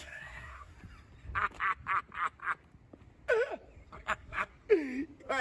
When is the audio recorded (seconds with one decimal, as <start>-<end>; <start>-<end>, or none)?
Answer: 0.7-3.9; 4.5-5.4